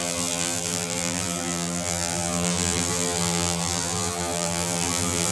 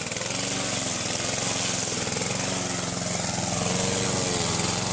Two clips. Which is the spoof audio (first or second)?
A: first